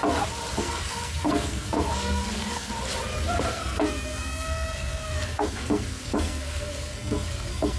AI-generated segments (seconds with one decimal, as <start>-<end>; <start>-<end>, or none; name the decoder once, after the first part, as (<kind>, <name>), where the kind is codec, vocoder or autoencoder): 0.6-2.7 (codec, SNAC); 3.5-7.8